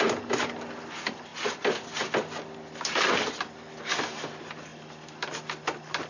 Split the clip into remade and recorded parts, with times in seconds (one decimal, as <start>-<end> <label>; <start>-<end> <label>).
0.0-4.7 recorded; 4.7-5.3 remade; 5.3-6.1 recorded